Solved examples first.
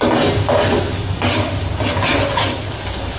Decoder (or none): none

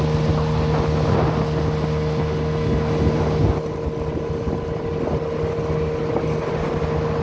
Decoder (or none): none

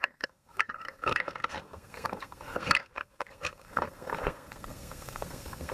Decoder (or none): codec, SNAC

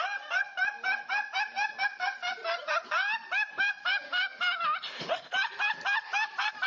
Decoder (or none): vocoder, BigVGAN v2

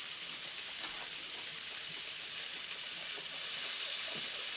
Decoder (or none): none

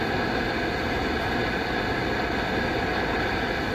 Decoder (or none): none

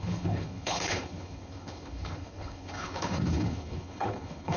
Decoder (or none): codec, HILCodec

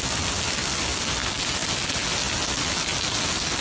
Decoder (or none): none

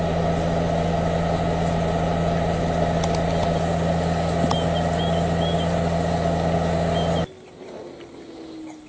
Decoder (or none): none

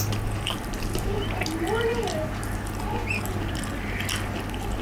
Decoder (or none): none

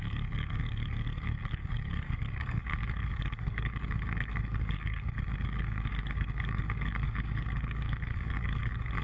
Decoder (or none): codec, DAC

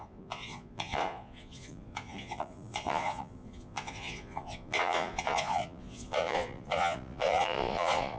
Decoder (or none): vocoder, Vocos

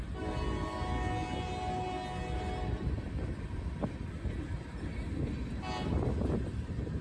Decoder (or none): none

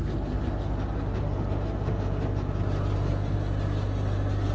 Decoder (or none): none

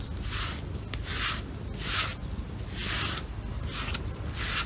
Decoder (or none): none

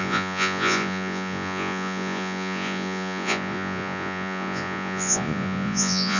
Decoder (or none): vocoder, Vocos